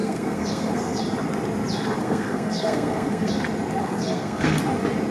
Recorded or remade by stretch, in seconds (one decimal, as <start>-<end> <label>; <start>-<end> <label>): 0.0-1.0 remade; 1.0-2.0 recorded; 2.0-3.3 remade; 3.3-3.8 recorded; 3.8-4.6 remade; 4.6-5.1 recorded